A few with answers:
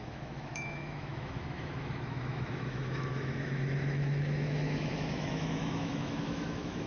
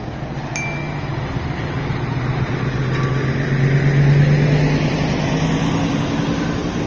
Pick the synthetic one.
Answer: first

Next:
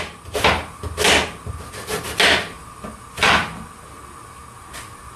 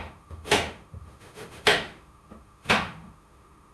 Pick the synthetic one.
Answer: second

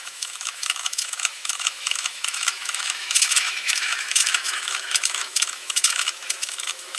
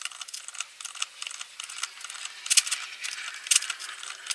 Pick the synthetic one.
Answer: first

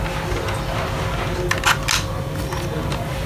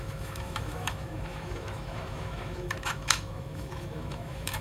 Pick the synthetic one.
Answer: second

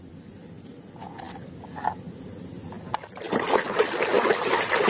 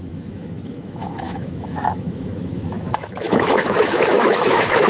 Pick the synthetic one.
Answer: second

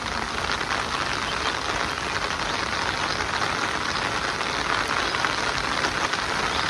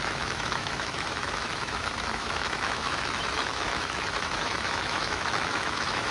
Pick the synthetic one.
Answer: second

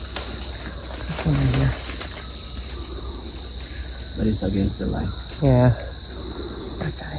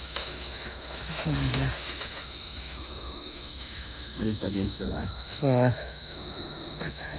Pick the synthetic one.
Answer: second